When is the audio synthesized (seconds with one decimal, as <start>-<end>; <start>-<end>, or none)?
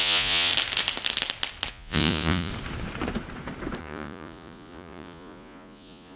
0.0-0.5; 1.7-2.5; 3.8-6.2